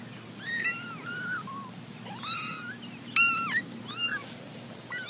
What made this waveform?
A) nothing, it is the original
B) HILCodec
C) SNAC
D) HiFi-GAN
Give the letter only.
A